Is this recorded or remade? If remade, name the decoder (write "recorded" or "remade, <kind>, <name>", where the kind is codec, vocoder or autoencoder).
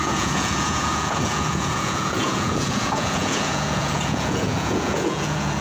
remade, vocoder, Vocos